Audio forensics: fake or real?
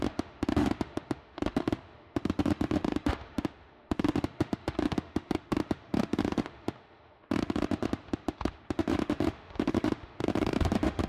fake